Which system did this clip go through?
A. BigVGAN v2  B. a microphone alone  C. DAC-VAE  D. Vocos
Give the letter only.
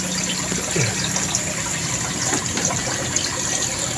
B